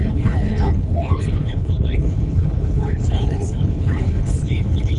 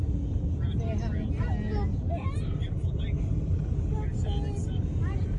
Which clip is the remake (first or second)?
first